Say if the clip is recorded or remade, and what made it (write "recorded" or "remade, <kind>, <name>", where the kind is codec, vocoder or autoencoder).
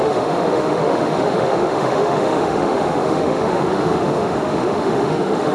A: remade, autoencoder, DAC-VAE